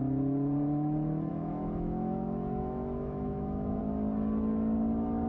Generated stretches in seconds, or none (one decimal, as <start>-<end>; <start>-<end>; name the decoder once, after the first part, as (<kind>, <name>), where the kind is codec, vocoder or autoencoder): 1.3-3.8 (autoencoder, DAC-VAE)